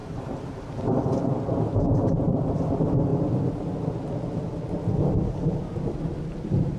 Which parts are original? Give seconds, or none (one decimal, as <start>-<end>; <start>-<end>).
0.9-6.8